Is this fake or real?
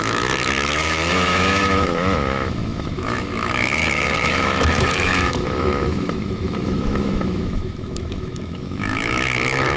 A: fake